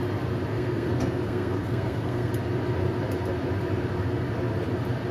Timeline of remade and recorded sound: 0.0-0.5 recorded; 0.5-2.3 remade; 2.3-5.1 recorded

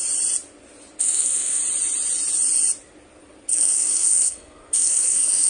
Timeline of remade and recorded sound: 0.0-1.0 recorded; 1.0-1.6 remade; 1.6-3.5 recorded; 3.5-5.5 remade

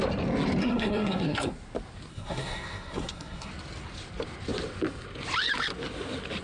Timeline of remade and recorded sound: 0.0-0.6 recorded; 0.6-1.5 remade; 1.5-2.1 recorded; 2.1-3.5 remade; 3.5-6.4 recorded

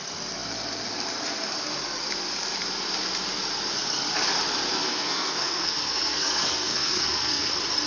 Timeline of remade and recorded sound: 0.0-4.7 recorded; 4.7-7.5 remade; 7.5-7.9 recorded

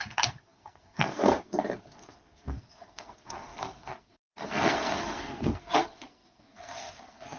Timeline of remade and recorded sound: 0.0-7.4 remade

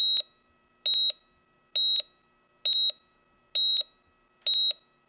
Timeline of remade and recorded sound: 0.0-5.1 recorded